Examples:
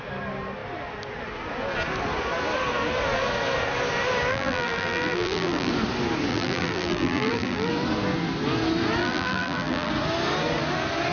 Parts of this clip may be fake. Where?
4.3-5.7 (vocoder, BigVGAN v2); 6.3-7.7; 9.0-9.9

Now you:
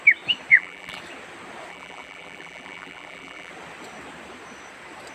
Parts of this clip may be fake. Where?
0.5-1.0 (vocoder, BigVGAN v2); 1.7-3.5

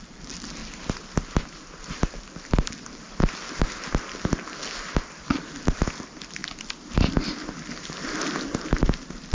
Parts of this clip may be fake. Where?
0.0-0.6 (vocoder, BigVGAN v2); 1.3-6.4

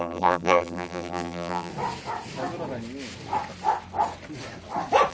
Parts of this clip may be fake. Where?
0.0-1.7 (vocoder, BigVGAN v2)